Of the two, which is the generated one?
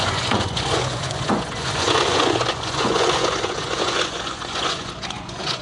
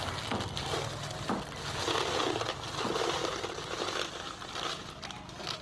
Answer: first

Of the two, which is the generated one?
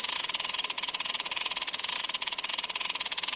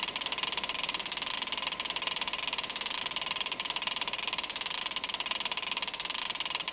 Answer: first